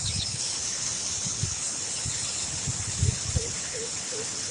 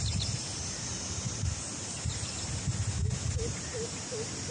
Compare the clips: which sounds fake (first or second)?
first